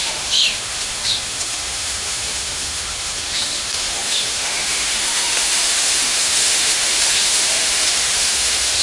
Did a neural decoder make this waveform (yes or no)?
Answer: yes